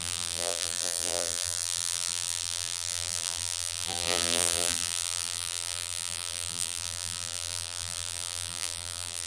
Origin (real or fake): fake